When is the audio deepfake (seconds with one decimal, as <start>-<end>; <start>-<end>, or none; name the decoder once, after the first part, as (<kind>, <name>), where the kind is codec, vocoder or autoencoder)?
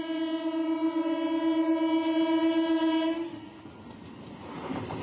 none